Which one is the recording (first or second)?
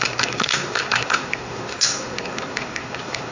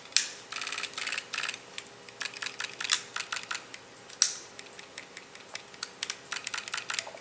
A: second